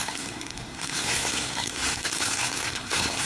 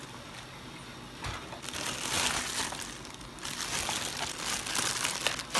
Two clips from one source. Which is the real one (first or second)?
second